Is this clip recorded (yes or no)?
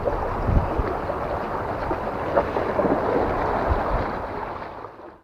yes